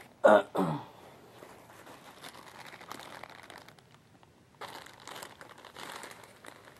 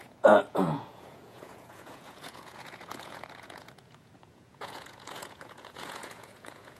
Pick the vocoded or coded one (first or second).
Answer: second